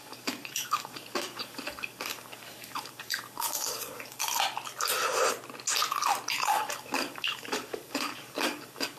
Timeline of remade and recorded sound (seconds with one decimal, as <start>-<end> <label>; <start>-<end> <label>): 0.0-4.2 remade; 4.2-6.3 recorded; 6.3-9.0 remade